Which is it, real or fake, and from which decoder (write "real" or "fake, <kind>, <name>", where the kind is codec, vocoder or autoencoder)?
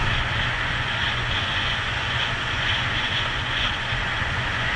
fake, vocoder, Vocos